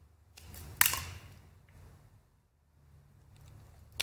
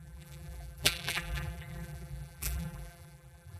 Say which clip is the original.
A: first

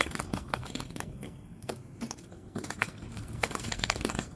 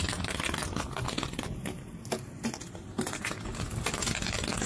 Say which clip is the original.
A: second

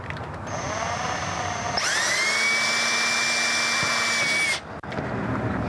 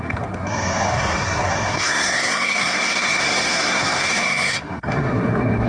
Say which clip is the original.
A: first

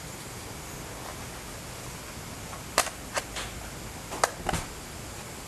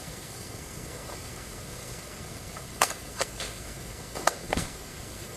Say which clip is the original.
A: first